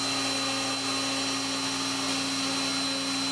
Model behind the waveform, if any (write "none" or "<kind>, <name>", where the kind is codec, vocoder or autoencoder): none